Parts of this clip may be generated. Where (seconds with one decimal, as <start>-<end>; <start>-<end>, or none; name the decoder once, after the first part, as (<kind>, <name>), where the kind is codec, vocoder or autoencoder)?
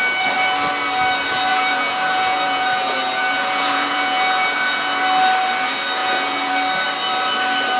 1.5-5.0 (vocoder, Vocos); 6.0-6.5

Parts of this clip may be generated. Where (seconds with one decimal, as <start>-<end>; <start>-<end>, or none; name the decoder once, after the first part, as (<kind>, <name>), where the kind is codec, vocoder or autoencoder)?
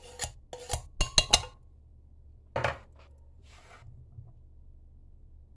none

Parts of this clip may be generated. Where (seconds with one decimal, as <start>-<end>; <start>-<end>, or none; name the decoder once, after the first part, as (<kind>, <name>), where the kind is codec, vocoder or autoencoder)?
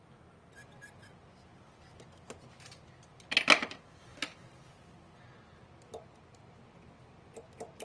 none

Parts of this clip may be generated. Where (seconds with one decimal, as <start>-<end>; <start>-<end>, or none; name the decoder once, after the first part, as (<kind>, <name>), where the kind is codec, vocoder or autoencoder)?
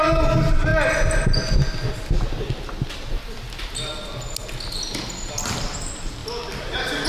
none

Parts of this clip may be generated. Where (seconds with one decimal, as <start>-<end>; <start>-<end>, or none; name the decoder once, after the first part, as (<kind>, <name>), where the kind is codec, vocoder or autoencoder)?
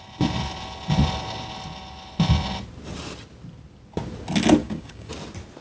4.6-5.1 (codec, DAC)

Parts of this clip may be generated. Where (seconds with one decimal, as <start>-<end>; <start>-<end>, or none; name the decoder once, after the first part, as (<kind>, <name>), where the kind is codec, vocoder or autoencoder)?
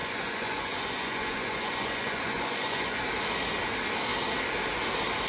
0.0-3.0 (vocoder, Vocos)